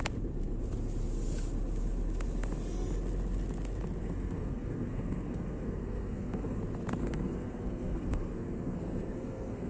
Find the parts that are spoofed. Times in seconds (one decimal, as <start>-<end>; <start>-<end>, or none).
4.0-6.6; 7.0-9.7

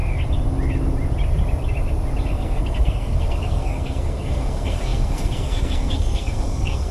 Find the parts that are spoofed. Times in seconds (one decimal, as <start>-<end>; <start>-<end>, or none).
2.3-6.9